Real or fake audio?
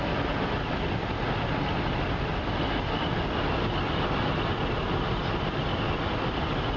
real